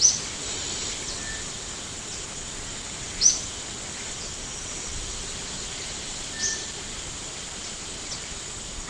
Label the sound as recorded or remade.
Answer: recorded